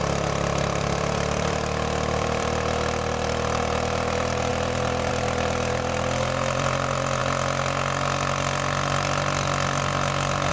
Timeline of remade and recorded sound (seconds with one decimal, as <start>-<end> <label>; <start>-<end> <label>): 0.0-7.2 remade; 7.2-10.5 recorded

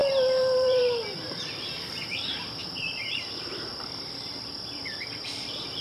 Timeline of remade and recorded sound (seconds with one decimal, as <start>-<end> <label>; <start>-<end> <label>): 0.0-5.8 remade

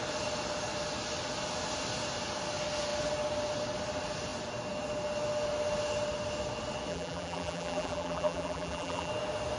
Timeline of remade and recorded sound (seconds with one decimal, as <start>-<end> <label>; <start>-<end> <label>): 0.0-6.9 recorded; 6.9-9.1 remade; 9.1-9.6 recorded

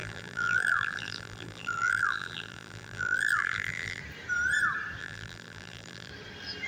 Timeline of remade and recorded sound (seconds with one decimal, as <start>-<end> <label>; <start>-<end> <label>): 0.0-4.0 remade; 4.0-5.0 recorded; 5.0-6.1 remade; 6.1-6.7 recorded

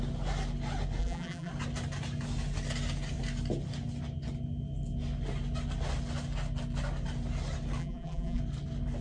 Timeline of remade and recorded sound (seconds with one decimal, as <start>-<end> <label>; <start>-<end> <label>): 0.0-1.0 recorded; 1.0-1.5 remade; 1.5-7.8 recorded; 7.8-8.4 remade; 8.4-9.0 recorded

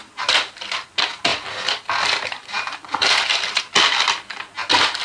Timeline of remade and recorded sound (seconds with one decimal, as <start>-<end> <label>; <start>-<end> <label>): 0.0-1.3 recorded; 1.3-3.6 remade; 3.6-5.0 recorded

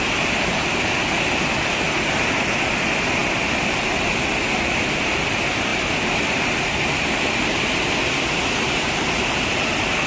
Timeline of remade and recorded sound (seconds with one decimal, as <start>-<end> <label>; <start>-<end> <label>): 0.0-5.7 recorded; 5.7-6.5 remade; 6.5-10.1 recorded

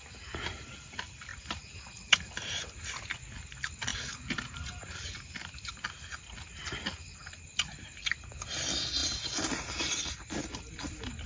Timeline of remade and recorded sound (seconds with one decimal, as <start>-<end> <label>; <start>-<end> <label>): 0.0-1.3 recorded; 1.3-1.8 remade; 1.8-3.9 recorded; 3.9-5.7 remade; 5.7-9.0 recorded; 9.0-10.9 remade; 10.9-11.3 recorded